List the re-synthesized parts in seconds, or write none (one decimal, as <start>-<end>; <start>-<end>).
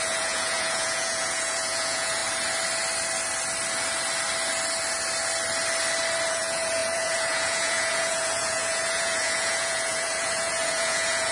0.0-2.2; 6.3-11.3